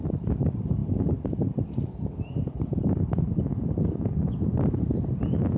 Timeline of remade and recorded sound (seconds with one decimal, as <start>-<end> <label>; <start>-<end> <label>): 0.0-5.6 recorded